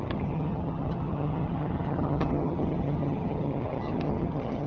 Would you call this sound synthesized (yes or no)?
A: yes